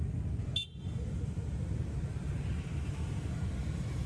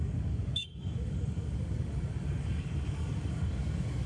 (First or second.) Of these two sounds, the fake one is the second